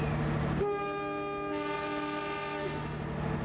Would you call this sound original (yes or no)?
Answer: yes